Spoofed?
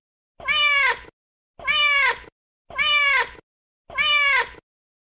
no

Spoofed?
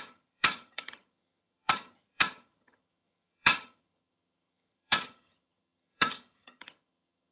yes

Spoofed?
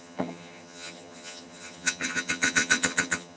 yes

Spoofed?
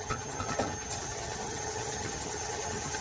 yes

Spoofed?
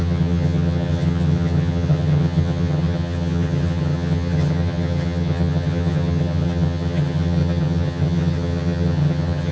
yes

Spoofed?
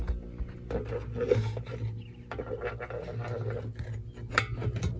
no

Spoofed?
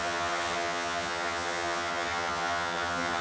yes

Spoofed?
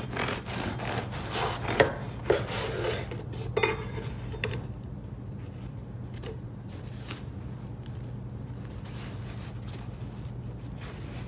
no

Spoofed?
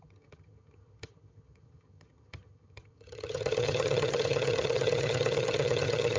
yes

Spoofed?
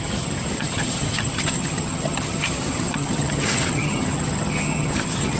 yes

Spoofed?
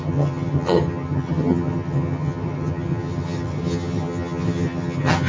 yes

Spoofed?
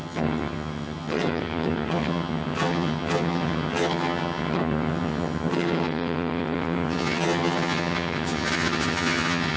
yes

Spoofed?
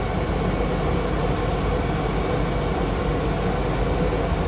no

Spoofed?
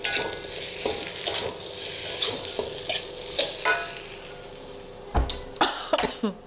no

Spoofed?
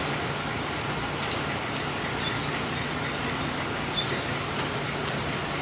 no